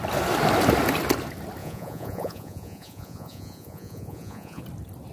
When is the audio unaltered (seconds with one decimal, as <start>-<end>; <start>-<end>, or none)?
0.0-1.6; 4.6-5.1